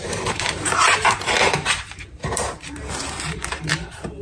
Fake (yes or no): yes